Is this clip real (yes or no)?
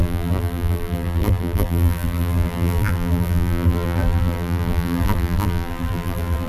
no